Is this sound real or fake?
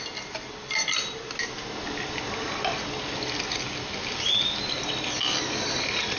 real